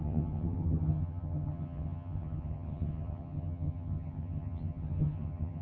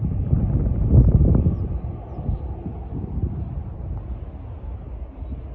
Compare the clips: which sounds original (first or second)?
second